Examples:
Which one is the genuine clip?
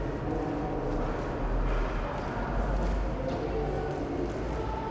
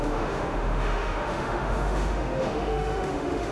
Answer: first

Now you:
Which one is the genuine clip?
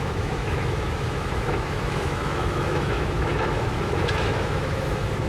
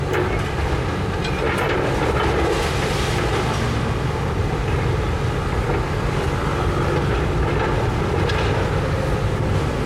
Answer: second